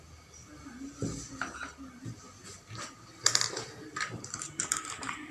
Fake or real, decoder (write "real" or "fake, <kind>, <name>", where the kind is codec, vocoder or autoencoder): fake, vocoder, BigVGAN v2